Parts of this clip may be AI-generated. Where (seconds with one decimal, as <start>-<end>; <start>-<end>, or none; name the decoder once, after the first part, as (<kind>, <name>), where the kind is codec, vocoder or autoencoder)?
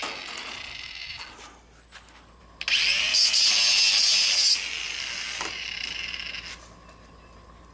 none